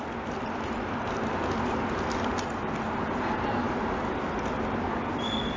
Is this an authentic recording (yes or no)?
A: yes